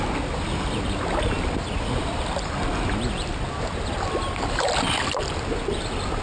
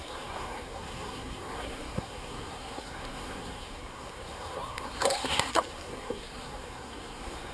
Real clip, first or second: first